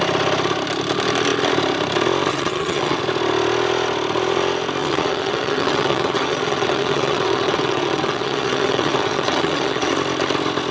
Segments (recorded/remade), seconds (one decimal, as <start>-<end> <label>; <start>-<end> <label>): 0.0-2.3 recorded; 2.3-3.0 remade; 3.0-4.8 recorded; 4.8-9.9 remade; 9.9-10.7 recorded